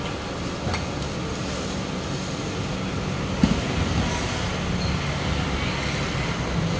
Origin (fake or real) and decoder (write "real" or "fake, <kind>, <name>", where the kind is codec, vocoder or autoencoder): real